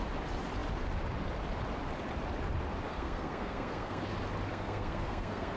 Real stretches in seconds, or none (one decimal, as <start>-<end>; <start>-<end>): 0.0-2.9; 4.0-4.5